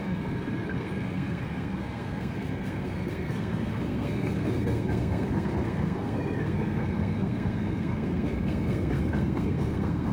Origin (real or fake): fake